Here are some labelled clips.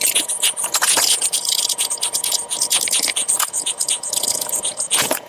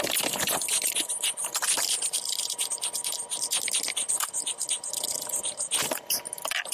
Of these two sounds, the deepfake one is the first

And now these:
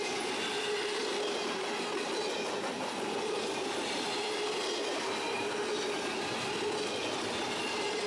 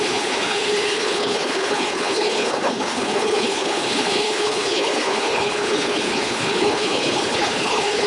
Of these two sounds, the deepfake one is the second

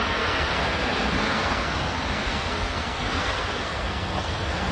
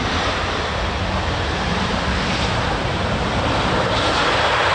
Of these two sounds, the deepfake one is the first